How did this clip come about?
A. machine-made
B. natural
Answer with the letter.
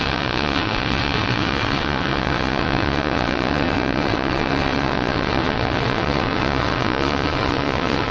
A